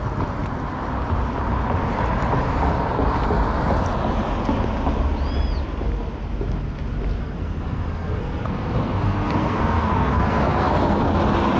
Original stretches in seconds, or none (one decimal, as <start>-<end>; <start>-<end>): 0.0-7.2; 11.1-11.6